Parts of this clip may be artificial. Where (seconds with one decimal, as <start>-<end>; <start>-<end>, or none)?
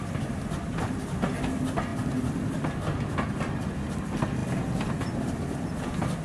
none